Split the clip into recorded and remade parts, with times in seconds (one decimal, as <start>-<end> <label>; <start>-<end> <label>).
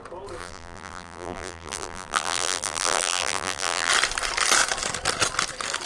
0.0-0.4 recorded; 0.4-3.9 remade; 3.9-5.9 recorded